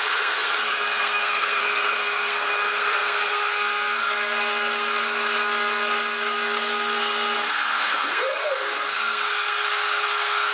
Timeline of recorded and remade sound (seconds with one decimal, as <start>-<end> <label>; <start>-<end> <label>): 0.0-10.5 remade